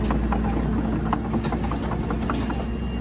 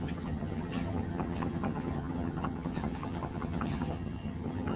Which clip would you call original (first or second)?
first